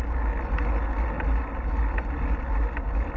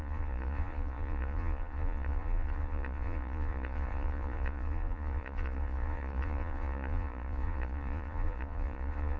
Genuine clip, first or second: first